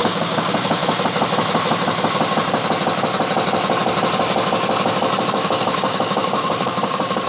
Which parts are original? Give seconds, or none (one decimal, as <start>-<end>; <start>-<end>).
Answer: 0.8-5.2

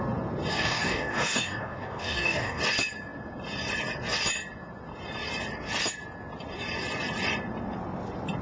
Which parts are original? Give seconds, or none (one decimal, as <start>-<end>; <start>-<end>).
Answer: 0.0-0.5; 2.6-8.4

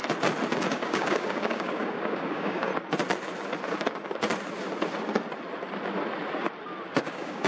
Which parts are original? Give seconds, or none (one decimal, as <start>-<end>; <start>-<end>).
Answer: 0.0-0.7; 2.7-7.0

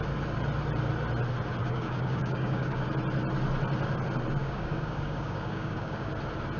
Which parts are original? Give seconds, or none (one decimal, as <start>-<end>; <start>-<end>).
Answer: 0.0-1.6; 2.9-4.4; 6.1-6.6